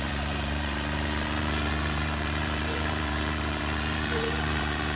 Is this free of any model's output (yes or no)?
no